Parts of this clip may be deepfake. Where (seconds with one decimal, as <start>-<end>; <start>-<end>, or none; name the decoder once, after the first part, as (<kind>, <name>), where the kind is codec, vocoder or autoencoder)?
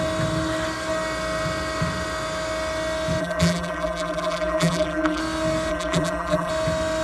3.2-5.2 (vocoder, BigVGAN v2); 5.7-6.5